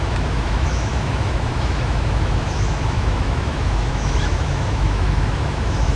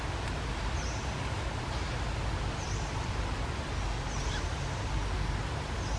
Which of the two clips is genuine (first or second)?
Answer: second